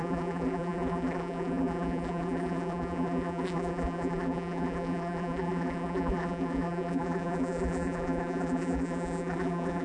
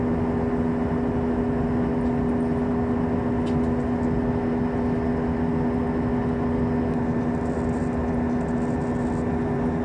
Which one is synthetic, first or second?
first